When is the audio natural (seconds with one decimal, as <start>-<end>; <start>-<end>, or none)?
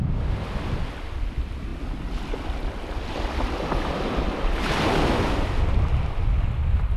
0.0-7.0